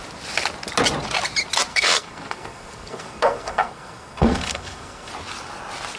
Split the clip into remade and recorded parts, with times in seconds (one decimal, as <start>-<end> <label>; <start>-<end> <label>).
0.0-1.7 recorded; 1.7-5.1 remade; 5.1-6.0 recorded